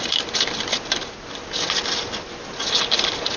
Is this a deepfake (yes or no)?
no